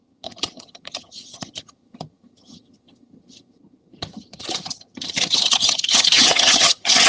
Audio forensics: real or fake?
fake